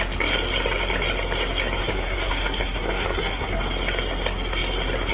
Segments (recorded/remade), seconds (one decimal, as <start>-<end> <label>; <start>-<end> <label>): 0.0-1.8 recorded; 1.8-3.6 remade; 3.6-5.1 recorded